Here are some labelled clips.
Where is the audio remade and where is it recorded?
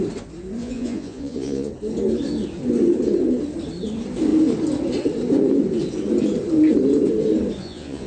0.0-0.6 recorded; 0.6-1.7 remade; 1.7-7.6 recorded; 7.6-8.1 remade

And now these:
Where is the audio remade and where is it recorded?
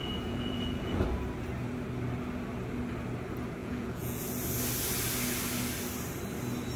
0.0-1.0 remade; 1.0-3.6 recorded; 3.6-4.2 remade; 4.2-6.8 recorded